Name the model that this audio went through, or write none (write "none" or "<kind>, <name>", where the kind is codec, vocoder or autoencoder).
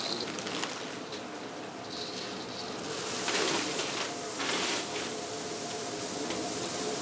none